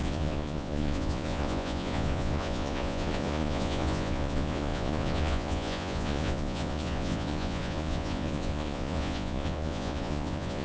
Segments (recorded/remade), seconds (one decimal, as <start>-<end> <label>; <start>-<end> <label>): 0.0-10.6 remade